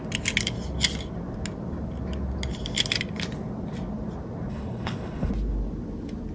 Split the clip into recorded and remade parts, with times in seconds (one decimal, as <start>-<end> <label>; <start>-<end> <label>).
0.0-4.5 recorded; 4.5-5.3 remade; 5.3-6.3 recorded